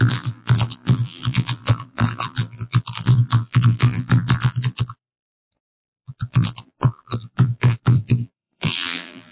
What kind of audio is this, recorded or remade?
remade